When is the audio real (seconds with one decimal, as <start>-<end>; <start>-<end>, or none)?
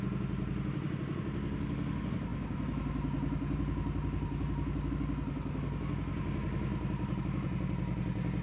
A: 0.0-8.4